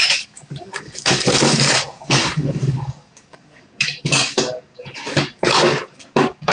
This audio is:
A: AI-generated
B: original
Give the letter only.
A